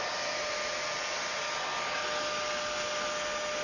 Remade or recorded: recorded